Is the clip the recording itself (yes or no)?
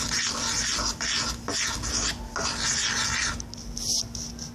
yes